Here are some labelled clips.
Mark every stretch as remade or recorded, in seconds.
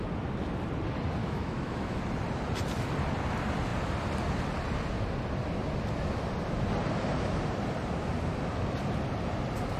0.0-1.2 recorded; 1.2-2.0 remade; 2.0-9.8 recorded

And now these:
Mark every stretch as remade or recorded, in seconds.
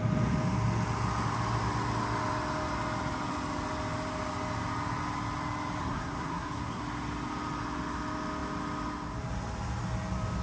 0.0-5.8 recorded; 5.8-6.8 remade; 6.8-10.4 recorded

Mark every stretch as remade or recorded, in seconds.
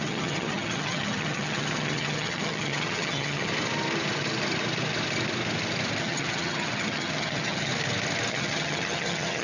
0.0-3.5 remade; 3.5-6.0 recorded; 6.0-7.7 remade; 7.7-8.3 recorded; 8.3-9.4 remade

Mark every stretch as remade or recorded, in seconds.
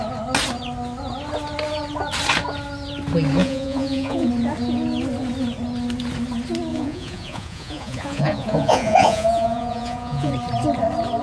0.0-3.4 recorded; 3.4-4.3 remade; 4.3-6.7 recorded; 6.7-10.3 remade; 10.3-11.2 recorded